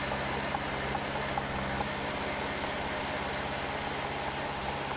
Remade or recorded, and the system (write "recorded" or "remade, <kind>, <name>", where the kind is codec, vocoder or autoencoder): recorded